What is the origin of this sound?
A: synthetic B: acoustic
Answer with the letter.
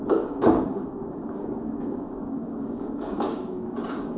A